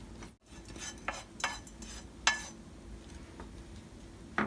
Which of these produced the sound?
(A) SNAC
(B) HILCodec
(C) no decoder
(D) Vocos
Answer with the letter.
C